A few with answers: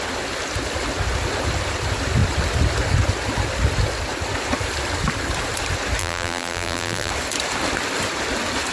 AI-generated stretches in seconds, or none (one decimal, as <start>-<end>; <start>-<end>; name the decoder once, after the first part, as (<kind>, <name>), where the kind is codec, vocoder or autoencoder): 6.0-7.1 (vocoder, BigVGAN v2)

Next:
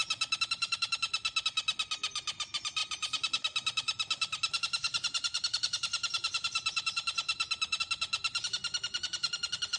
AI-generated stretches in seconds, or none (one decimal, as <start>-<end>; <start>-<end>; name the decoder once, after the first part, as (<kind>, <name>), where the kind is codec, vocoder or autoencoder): 2.8-7.8 (vocoder, BigVGAN v2)

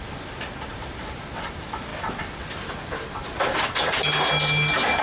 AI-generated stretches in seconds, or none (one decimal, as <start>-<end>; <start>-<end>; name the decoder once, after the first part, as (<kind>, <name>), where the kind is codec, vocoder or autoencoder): none